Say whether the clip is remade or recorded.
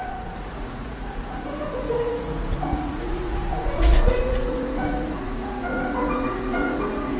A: remade